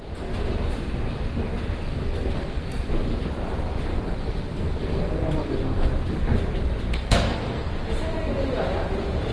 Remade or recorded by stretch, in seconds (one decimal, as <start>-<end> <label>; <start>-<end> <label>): 0.0-1.9 recorded; 1.9-2.9 remade; 2.9-3.9 recorded; 3.9-5.9 remade; 5.9-6.9 recorded; 6.9-7.7 remade; 7.7-9.3 recorded

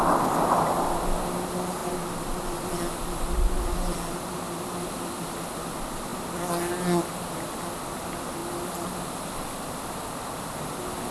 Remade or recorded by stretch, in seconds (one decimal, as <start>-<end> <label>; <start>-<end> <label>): 0.0-11.1 recorded

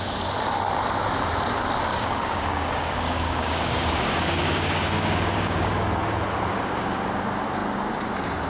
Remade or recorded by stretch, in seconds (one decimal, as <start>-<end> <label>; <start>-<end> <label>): 0.0-1.9 recorded; 1.9-5.7 remade; 5.7-8.5 recorded

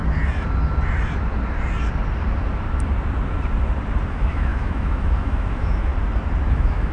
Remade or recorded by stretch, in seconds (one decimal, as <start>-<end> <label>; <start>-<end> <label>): 0.0-4.1 recorded; 4.1-5.9 remade; 5.9-6.5 recorded; 6.5-6.9 remade

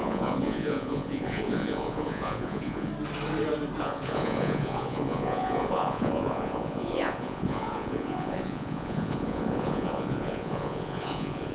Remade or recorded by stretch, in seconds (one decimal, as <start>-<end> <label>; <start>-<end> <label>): 0.0-2.9 remade; 2.9-3.8 recorded; 3.8-11.5 remade